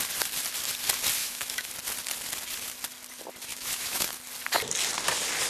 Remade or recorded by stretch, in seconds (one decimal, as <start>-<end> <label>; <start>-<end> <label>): 0.0-1.2 recorded; 1.2-1.7 remade; 1.7-3.5 recorded; 3.5-4.1 remade; 4.1-5.5 recorded